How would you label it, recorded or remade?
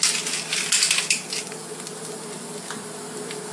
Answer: recorded